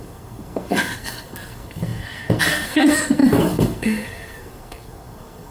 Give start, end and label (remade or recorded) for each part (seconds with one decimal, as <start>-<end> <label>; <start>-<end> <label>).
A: 0.0-5.5 remade